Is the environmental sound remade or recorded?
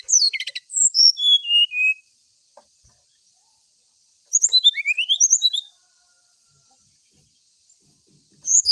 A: remade